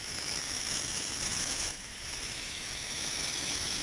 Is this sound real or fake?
fake